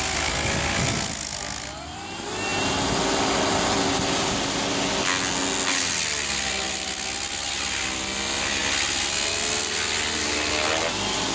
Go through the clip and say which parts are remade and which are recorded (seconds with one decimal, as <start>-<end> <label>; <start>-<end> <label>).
0.0-11.3 recorded